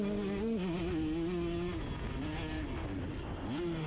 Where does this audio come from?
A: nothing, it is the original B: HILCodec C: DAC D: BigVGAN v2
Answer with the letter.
A